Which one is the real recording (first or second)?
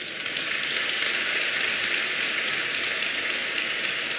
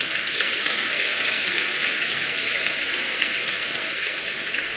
first